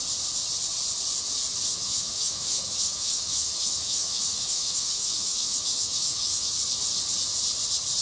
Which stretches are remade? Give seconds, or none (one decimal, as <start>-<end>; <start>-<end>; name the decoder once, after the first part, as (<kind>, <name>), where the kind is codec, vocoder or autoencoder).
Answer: 1.7-6.5 (autoencoder, DAC-VAE)